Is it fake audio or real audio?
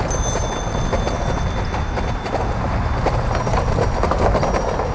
real